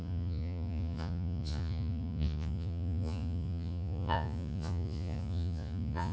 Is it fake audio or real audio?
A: fake